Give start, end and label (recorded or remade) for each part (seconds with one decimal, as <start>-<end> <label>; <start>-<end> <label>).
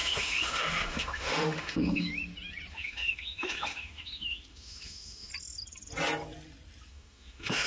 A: 0.0-2.1 remade; 2.1-2.7 recorded; 2.7-5.3 remade; 5.3-6.9 recorded; 6.9-7.7 remade